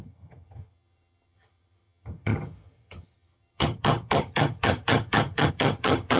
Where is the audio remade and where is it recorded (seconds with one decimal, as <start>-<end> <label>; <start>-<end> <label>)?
0.0-6.2 remade

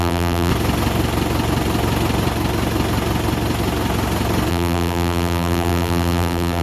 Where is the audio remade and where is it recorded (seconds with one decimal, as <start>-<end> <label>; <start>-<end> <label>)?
0.0-0.5 remade; 0.5-4.5 recorded; 4.5-6.6 remade

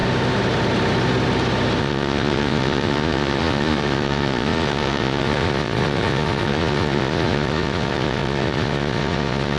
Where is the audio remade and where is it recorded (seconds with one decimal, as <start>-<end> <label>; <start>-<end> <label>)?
0.0-1.8 recorded; 1.8-9.6 remade

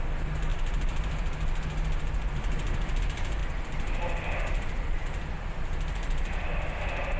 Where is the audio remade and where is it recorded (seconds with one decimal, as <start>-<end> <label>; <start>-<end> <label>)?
0.0-0.5 recorded; 0.5-3.0 remade; 3.0-3.4 recorded; 3.4-6.8 remade; 6.8-7.2 recorded

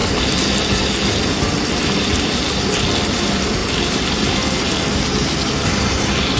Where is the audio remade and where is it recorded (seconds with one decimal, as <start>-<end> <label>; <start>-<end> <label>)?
0.0-3.6 recorded; 3.6-4.5 remade; 4.5-6.4 recorded

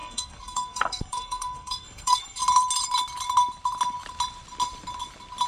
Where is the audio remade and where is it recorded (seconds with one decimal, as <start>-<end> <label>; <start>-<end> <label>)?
0.0-2.4 remade; 2.4-5.5 recorded

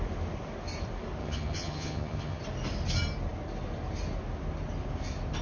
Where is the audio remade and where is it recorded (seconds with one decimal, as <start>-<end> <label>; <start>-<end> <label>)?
0.0-1.2 recorded; 1.2-2.4 remade; 2.4-5.4 recorded

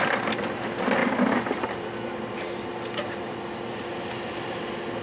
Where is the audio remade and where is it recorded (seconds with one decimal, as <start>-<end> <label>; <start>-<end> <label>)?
0.0-5.0 recorded